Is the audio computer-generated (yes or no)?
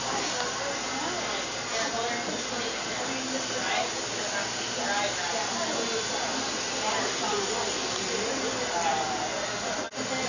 no